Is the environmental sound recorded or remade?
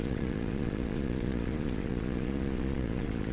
remade